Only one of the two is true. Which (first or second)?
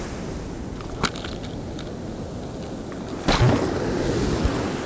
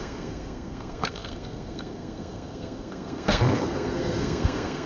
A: first